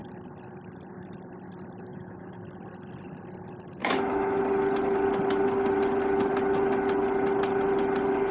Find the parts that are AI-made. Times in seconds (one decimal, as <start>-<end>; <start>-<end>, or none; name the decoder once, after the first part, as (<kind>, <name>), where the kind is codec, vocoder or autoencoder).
1.9-2.4 (autoencoder, DAC-VAE); 3.8-4.4

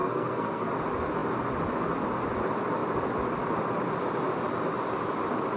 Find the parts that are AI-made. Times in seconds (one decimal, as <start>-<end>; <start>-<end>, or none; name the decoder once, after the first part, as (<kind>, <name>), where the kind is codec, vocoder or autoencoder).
0.0-0.7 (codec, SNAC)

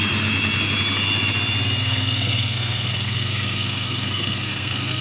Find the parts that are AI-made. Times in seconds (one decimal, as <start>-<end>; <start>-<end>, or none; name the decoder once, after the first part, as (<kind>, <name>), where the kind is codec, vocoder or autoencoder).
1.8-5.0 (codec, SNAC)

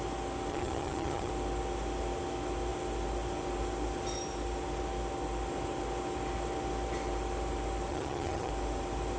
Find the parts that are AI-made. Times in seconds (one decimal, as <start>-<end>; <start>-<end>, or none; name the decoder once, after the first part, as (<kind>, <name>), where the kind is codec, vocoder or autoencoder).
0.5-1.3 (vocoder, HiFi-GAN); 7.9-8.5